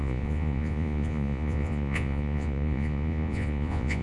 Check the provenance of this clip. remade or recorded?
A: remade